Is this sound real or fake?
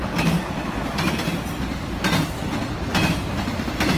real